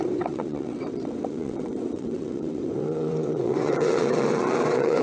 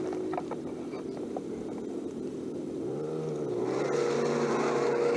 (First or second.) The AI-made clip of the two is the first